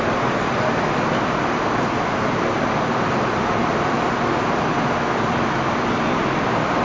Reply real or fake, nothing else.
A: real